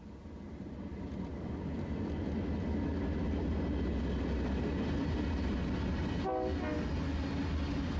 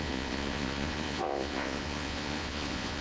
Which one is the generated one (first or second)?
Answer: second